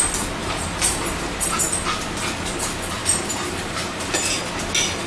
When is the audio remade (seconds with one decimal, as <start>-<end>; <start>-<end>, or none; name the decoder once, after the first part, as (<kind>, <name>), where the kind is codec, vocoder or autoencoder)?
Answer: 0.4-1.6 (vocoder, BigVGAN v2); 3.0-4.4